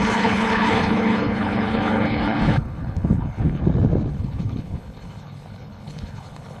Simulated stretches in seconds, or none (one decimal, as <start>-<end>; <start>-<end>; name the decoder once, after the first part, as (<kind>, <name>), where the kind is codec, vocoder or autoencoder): 0.0-3.6 (codec, HILCodec); 4.1-6.6